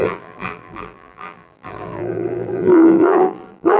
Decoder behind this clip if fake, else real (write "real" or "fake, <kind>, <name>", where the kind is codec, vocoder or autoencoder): fake, vocoder, BigVGAN v2